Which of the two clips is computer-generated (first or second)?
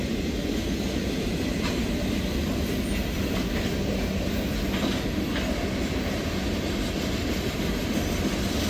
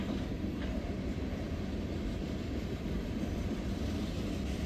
second